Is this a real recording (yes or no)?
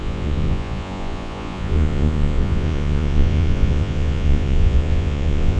no